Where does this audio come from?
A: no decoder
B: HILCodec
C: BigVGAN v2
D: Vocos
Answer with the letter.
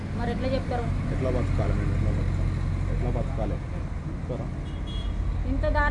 A